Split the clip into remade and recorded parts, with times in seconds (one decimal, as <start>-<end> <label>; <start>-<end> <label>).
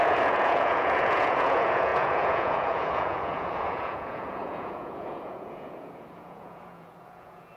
0.0-7.6 remade